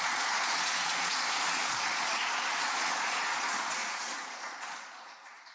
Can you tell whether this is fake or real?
fake